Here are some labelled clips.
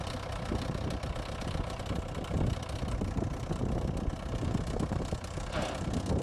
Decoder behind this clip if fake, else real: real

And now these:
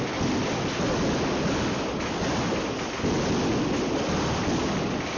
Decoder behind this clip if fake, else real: real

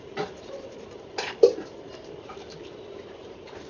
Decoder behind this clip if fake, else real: fake, vocoder, BigVGAN v2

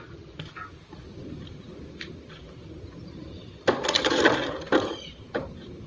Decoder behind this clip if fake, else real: fake, vocoder, BigVGAN v2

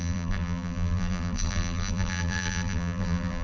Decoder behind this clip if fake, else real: fake, vocoder, BigVGAN v2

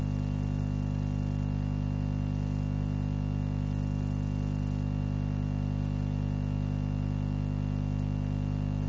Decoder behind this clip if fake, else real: real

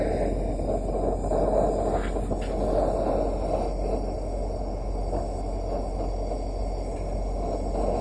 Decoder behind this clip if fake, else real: real